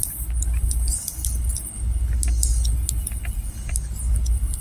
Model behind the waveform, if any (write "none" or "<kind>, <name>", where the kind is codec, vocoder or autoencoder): none